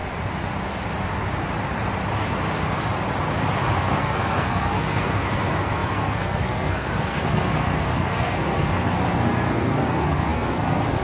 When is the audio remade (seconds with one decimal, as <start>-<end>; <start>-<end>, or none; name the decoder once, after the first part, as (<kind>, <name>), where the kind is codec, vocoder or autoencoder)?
3.8-11.0 (codec, SNAC)